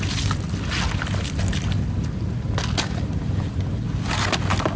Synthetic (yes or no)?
no